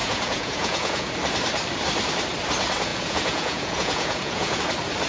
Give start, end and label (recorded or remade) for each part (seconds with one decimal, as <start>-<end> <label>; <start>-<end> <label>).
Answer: 0.0-1.1 remade; 1.1-2.9 recorded; 2.9-4.6 remade; 4.6-5.1 recorded